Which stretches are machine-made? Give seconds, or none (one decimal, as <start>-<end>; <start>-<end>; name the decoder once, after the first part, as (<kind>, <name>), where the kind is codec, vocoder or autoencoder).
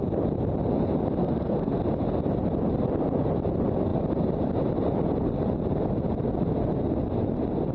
1.2-1.8 (codec, SNAC)